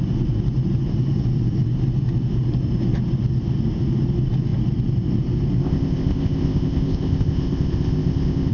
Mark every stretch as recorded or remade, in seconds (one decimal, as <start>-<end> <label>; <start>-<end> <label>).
0.0-5.6 recorded; 5.6-8.5 remade